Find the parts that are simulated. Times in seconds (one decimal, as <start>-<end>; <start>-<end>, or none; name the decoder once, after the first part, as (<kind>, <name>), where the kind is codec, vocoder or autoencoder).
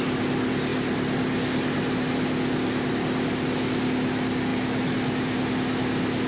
none